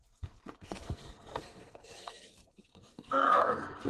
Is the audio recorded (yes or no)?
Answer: no